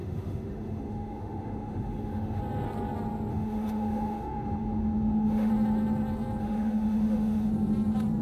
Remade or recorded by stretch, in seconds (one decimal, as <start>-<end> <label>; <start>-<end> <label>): 0.0-2.4 remade; 2.4-3.3 recorded; 3.3-5.5 remade; 5.5-6.4 recorded; 6.4-7.5 remade; 7.5-8.2 recorded